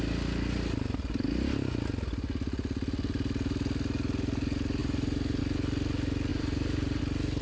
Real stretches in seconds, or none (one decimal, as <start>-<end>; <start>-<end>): 0.0-4.8; 5.4-6.3; 7.0-7.4